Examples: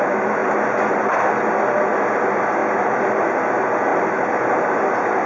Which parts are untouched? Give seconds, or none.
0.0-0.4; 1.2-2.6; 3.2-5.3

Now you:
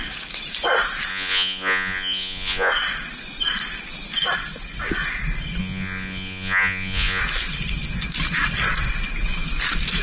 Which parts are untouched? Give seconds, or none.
0.0-1.1; 2.7-5.6; 7.2-10.0

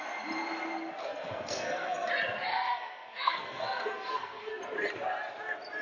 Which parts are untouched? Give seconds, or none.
0.0-1.0; 2.1-2.5; 4.6-5.8

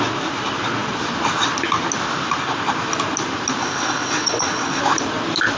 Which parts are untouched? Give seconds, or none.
0.0-3.6; 4.8-5.6

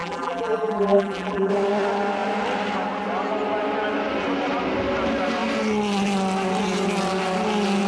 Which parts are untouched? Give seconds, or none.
1.5-7.9